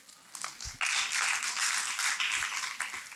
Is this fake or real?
real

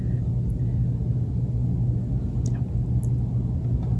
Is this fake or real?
real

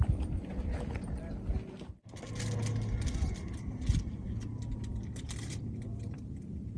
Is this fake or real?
real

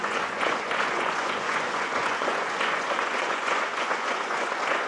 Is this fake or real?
fake